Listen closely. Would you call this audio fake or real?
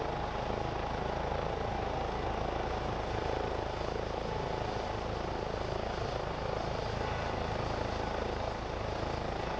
real